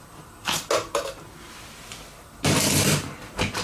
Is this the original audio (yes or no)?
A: yes